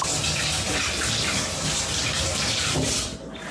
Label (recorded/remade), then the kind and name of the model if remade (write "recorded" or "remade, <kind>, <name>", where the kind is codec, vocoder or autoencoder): recorded